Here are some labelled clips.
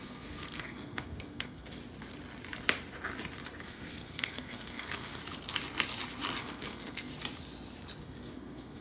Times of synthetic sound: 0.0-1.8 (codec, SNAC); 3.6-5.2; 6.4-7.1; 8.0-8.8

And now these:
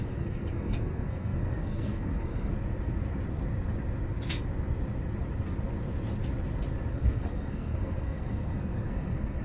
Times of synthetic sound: 0.0-2.5 (codec, SNAC); 6.9-9.4

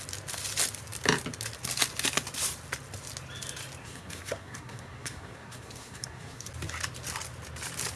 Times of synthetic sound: 3.8-6.5 (codec, SNAC)